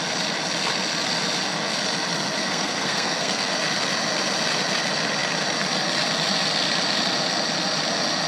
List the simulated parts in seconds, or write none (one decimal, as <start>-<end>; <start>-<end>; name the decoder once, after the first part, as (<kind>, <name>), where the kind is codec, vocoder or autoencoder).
2.4-3.5 (codec, SNAC)